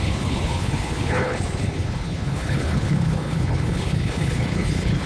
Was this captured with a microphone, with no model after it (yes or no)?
no